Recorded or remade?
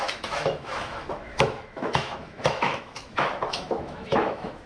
remade